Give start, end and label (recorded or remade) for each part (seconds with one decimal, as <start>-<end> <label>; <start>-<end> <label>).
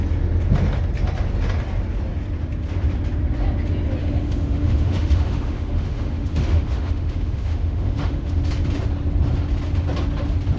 0.0-4.0 recorded; 4.0-8.4 remade; 8.4-10.6 recorded